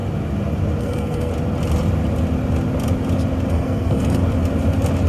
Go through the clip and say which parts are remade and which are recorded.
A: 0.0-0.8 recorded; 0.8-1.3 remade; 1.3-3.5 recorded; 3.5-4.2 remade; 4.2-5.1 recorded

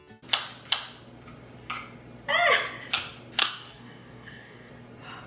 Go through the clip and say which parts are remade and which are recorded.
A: 0.0-3.4 recorded; 3.4-4.7 remade; 4.7-5.3 recorded

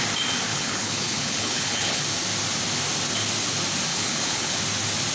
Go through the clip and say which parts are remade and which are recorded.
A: 0.0-0.5 recorded; 0.5-2.0 remade; 2.0-3.9 recorded; 3.9-4.6 remade; 4.6-5.1 recorded

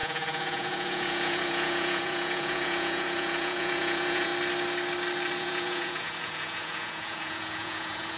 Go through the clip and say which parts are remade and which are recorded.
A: 0.0-4.3 remade; 4.3-5.4 recorded; 5.4-8.2 remade

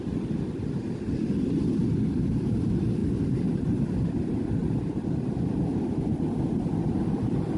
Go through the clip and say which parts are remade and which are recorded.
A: 0.0-7.6 recorded

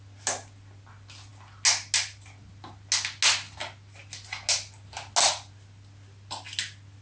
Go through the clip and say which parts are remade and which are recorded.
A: 0.0-7.0 recorded

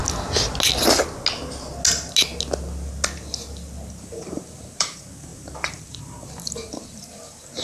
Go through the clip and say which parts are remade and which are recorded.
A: 0.0-4.0 recorded; 4.0-7.6 remade

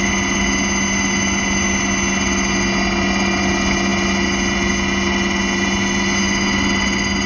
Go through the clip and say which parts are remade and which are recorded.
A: 0.0-7.3 recorded